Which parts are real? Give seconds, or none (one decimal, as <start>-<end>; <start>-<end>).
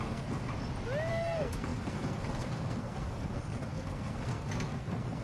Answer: 0.5-1.1